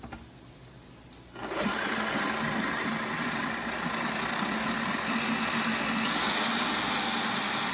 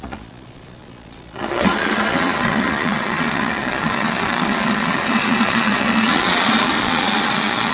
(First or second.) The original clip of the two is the first